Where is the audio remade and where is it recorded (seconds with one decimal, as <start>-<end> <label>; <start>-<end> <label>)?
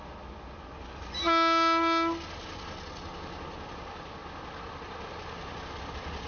0.0-6.3 recorded